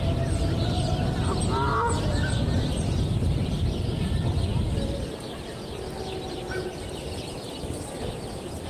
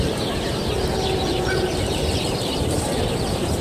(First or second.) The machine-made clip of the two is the second